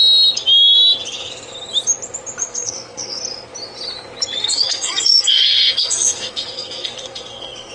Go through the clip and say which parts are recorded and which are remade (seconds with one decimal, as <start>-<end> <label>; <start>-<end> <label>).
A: 0.0-2.4 recorded; 2.4-3.2 remade; 3.2-4.4 recorded; 4.4-7.7 remade